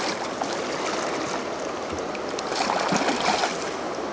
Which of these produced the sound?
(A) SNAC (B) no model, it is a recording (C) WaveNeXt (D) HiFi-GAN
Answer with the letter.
B